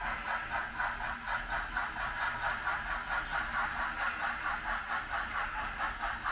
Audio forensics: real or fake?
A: real